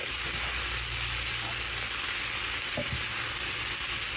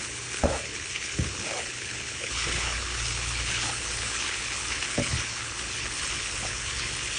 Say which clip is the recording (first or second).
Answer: first